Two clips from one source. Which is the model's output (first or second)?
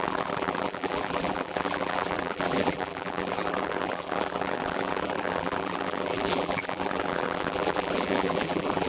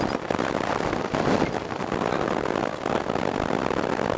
first